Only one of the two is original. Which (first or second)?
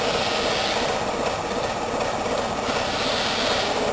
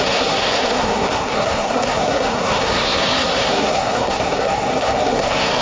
first